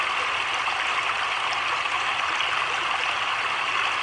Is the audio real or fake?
real